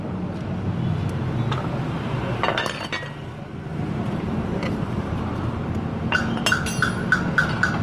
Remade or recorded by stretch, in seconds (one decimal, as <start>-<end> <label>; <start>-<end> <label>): 0.0-3.7 recorded; 3.7-5.6 remade; 5.6-7.8 recorded